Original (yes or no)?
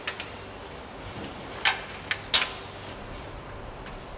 yes